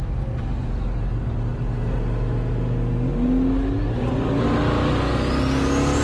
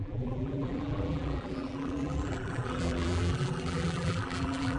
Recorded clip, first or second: first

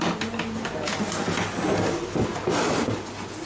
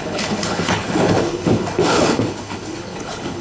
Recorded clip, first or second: first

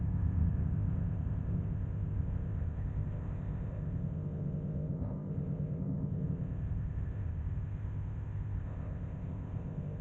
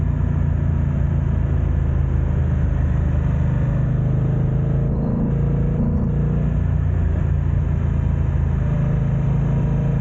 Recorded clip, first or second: second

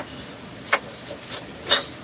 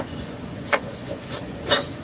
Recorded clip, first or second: first